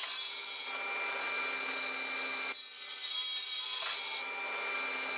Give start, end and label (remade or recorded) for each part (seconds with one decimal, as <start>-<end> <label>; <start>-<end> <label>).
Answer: 0.0-5.2 recorded